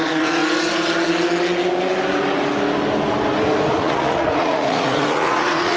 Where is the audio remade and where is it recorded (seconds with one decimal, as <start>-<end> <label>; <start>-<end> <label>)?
0.0-0.4 remade; 0.4-3.7 recorded; 3.7-5.8 remade